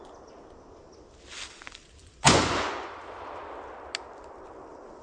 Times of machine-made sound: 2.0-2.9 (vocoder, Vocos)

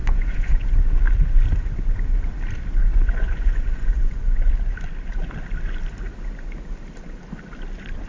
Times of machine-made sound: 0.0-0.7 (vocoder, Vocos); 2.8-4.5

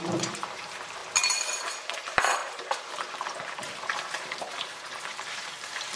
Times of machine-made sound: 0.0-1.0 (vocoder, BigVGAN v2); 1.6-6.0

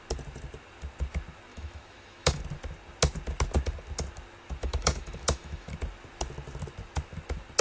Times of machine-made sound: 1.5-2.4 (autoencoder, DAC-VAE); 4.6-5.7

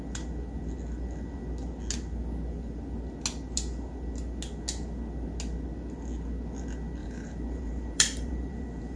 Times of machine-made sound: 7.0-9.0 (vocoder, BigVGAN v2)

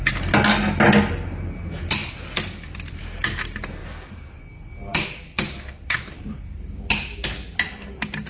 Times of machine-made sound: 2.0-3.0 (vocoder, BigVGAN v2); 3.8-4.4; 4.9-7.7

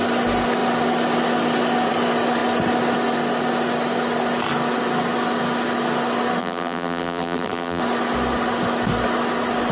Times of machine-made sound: 6.4-7.8 (vocoder, BigVGAN v2)